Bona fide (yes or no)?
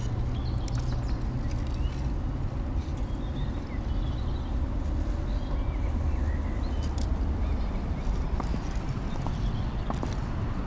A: yes